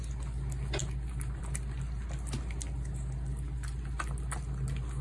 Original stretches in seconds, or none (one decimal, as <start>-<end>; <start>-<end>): 0.0-5.0

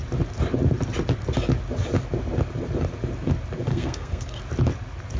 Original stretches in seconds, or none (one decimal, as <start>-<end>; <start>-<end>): 0.0-3.7; 4.4-5.2